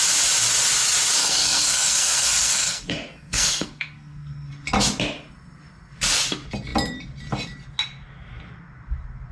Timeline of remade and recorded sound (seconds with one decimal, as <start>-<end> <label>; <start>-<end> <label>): 0.0-1.2 recorded; 1.2-4.5 remade; 4.5-9.3 recorded